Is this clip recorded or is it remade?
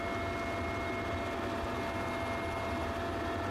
recorded